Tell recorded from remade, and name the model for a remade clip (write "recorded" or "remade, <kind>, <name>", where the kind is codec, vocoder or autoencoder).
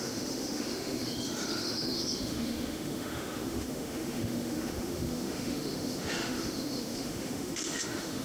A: remade, autoencoder, DAC-VAE